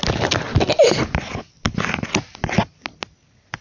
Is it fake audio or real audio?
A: real